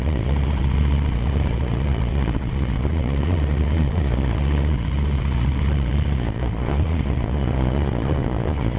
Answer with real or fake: fake